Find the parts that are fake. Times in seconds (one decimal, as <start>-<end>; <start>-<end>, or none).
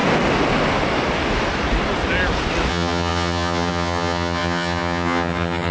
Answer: 2.7-5.7